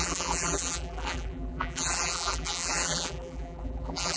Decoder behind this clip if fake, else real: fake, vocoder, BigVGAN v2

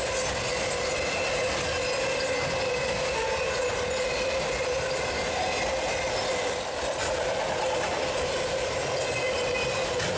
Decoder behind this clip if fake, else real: real